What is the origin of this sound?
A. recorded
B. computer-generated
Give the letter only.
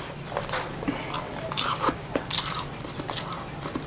A